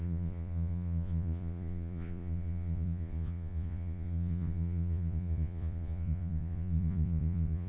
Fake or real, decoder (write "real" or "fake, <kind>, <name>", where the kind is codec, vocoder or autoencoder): fake, vocoder, Vocos